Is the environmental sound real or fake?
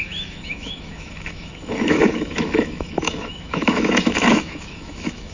fake